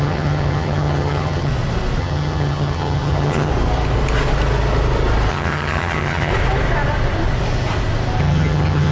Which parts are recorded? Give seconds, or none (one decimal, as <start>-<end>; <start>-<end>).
1.5-2.0; 3.5-5.3; 6.3-8.2